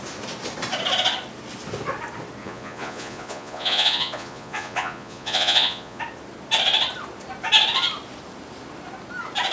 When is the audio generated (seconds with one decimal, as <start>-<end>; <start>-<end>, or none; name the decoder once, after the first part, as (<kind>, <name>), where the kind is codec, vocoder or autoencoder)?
2.4-6.0 (vocoder, Vocos)